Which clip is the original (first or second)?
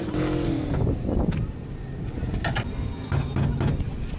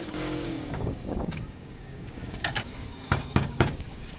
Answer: first